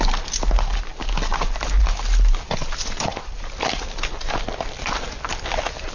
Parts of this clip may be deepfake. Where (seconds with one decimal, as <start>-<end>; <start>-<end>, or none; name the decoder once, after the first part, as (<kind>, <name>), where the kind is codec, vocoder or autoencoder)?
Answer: none